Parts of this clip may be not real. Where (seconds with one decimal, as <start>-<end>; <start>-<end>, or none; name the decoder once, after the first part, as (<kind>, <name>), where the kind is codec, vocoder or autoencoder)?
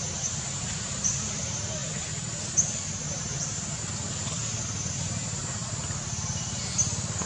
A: 0.0-1.8 (vocoder, BigVGAN v2); 3.2-4.4; 4.9-5.6